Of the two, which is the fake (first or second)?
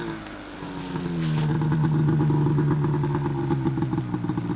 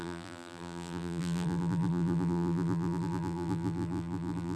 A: second